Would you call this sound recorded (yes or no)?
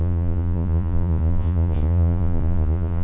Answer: no